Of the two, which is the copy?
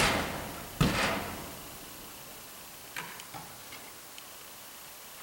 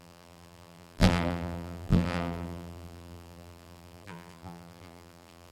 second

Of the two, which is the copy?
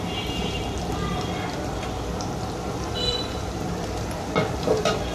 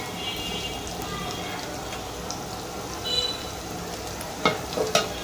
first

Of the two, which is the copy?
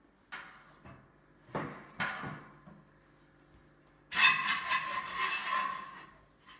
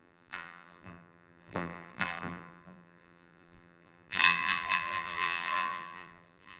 second